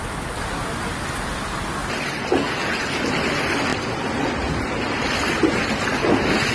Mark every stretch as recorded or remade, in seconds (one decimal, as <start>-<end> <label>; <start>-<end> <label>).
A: 0.0-6.5 recorded